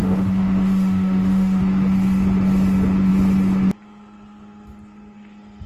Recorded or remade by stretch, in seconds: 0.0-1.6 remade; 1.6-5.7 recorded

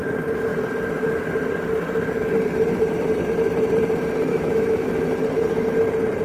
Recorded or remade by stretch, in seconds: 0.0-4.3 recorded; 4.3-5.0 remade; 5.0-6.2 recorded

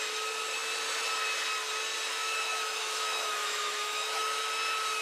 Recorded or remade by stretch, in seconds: 0.0-2.1 recorded; 2.1-4.4 remade; 4.4-5.0 recorded

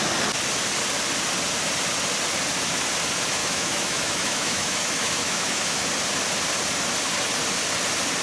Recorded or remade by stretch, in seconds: 0.0-3.4 recorded; 3.4-5.9 remade; 5.9-8.2 recorded

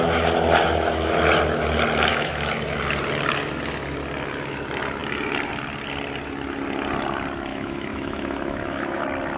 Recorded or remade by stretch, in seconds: 0.0-2.1 recorded; 2.1-2.8 remade; 2.8-7.5 recorded; 7.5-9.0 remade; 9.0-9.4 recorded

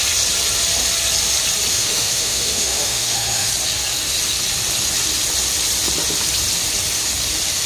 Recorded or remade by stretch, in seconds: 0.0-1.7 recorded; 1.7-3.5 remade; 3.5-7.7 recorded